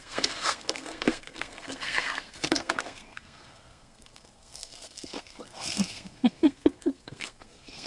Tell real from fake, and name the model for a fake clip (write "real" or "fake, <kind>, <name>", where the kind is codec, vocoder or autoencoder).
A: fake, codec, SNAC